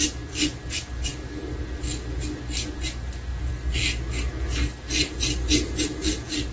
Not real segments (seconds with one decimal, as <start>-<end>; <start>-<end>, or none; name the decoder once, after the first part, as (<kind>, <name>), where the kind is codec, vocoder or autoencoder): none